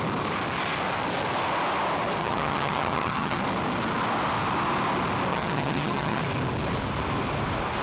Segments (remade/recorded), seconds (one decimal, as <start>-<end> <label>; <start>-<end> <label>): 0.0-2.2 recorded; 2.2-3.4 remade; 3.4-5.3 recorded; 5.3-6.2 remade; 6.2-7.8 recorded